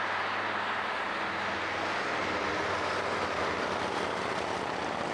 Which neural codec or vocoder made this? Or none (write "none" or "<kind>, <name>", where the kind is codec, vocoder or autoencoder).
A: none